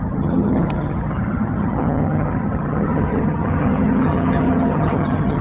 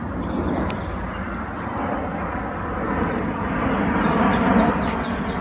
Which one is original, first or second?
second